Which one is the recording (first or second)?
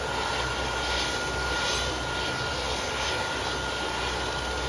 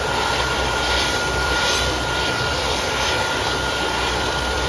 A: first